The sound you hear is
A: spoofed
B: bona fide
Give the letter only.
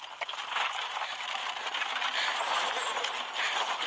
B